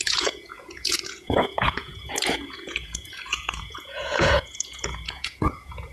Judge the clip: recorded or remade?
remade